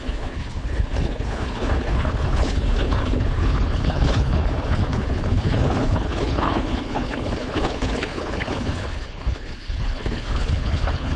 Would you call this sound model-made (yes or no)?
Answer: yes